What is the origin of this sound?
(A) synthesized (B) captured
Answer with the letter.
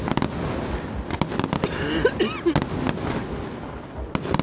B